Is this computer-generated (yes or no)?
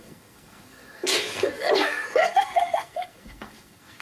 yes